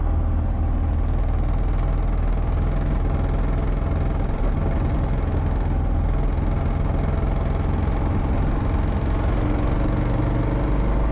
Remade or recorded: recorded